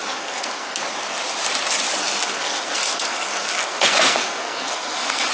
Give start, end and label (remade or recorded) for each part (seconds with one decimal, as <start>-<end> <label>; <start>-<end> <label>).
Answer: 0.0-0.8 remade; 0.8-2.0 recorded; 2.0-5.3 remade

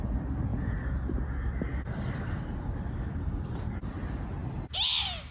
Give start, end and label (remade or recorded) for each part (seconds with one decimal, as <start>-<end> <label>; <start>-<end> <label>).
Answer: 0.0-0.5 recorded; 0.5-1.2 remade; 1.2-1.7 recorded; 1.7-3.9 remade; 3.9-5.3 recorded

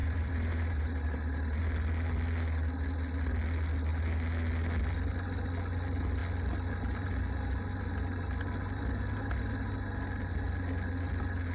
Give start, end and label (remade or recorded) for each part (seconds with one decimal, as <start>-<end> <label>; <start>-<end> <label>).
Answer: 0.0-1.6 remade; 1.6-11.5 recorded

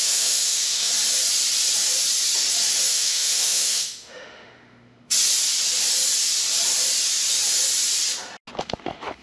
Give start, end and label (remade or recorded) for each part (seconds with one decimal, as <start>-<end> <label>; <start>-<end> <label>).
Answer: 0.0-0.9 remade; 0.9-2.9 recorded; 2.9-5.1 remade; 5.1-8.6 recorded; 8.6-9.2 remade

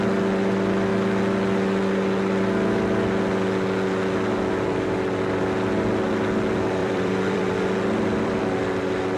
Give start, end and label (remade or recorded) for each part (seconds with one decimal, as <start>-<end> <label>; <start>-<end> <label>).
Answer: 0.0-6.8 recorded; 6.8-8.4 remade; 8.4-9.2 recorded